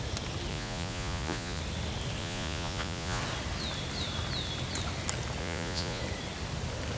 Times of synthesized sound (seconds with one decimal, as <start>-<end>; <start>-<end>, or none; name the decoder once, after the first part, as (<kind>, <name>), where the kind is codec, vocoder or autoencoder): 0.5-1.6 (vocoder, Vocos); 2.2-3.2; 5.4-6.0